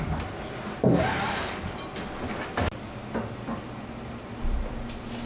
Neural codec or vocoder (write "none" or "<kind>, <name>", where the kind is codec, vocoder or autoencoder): none